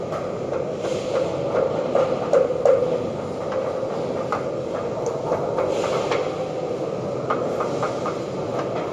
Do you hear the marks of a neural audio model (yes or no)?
no